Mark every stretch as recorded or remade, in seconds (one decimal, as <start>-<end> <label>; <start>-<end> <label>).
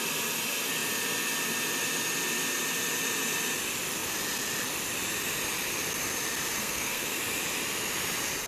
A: 0.0-6.6 recorded; 6.6-7.2 remade; 7.2-8.5 recorded